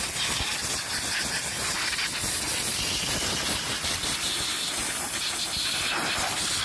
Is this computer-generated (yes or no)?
no